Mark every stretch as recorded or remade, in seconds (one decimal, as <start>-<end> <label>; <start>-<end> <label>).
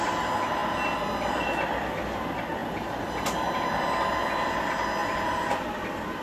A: 0.0-6.2 recorded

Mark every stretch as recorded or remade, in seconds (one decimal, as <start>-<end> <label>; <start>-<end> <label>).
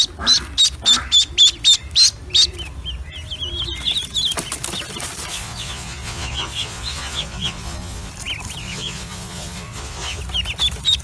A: 0.0-5.3 recorded; 5.3-8.1 remade; 8.1-8.6 recorded; 8.6-10.2 remade; 10.2-11.0 recorded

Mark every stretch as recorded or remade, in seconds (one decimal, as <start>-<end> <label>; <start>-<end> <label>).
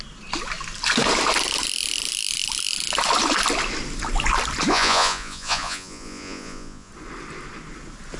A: 0.0-4.7 recorded; 4.7-6.9 remade; 6.9-8.2 recorded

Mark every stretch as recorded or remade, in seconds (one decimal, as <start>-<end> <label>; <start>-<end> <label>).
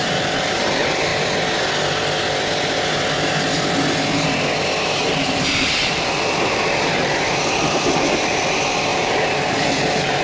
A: 0.0-1.1 remade; 1.1-4.8 recorded; 4.8-10.2 remade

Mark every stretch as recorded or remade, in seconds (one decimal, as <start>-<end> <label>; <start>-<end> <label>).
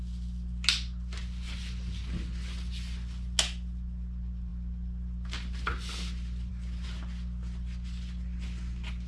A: 0.0-9.1 recorded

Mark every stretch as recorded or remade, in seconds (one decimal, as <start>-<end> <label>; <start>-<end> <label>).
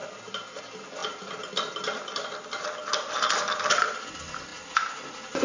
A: 0.0-5.4 recorded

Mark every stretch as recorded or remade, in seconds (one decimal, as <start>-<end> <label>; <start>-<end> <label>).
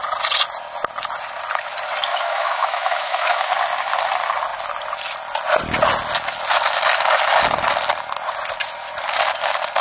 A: 0.0-2.1 recorded; 2.1-3.5 remade; 3.5-9.8 recorded